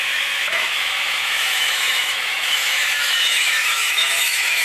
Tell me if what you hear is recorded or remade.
remade